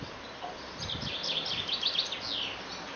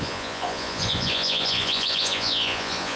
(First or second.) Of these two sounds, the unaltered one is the first